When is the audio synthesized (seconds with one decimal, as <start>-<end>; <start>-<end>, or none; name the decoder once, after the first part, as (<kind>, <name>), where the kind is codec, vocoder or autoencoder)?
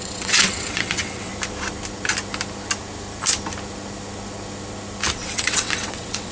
0.0-1.3 (vocoder, WaveNeXt); 5.1-6.3